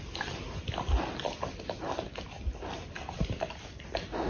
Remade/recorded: recorded